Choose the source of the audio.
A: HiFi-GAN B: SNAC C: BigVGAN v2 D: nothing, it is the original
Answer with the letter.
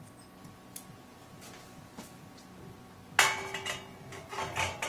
D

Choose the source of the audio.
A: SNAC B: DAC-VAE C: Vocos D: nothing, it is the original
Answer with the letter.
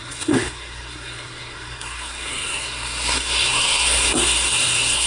A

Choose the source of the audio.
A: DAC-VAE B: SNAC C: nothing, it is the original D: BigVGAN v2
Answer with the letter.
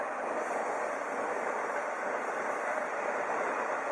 D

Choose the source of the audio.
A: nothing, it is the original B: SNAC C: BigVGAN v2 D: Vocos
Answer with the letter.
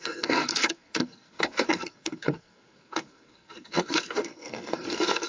B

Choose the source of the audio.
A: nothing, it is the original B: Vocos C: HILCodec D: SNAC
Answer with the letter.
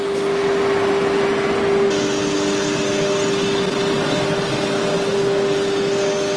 A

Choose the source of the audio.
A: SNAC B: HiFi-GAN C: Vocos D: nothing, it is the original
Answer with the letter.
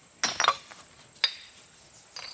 D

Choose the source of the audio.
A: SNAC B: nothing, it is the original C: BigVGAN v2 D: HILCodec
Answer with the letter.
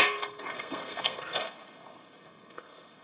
A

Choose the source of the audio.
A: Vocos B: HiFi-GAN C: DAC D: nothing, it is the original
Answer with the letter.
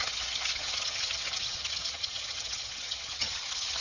B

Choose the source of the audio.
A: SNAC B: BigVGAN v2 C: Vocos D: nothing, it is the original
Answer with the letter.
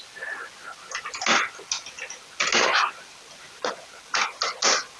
D